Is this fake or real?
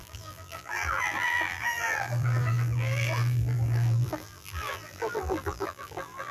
fake